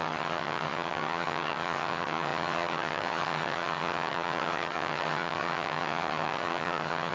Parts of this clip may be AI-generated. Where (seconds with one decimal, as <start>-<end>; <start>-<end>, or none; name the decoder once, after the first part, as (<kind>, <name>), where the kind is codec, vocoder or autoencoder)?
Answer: 0.0-7.1 (vocoder, HiFi-GAN)